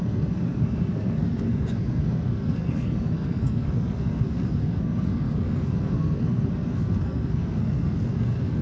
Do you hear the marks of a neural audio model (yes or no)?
yes